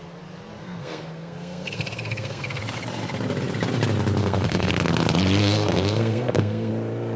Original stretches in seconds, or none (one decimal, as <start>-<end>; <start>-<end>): 0.0-0.6; 2.6-4.2; 4.7-5.4; 6.7-7.2